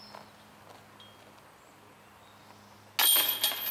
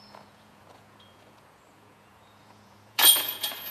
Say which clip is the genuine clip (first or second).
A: first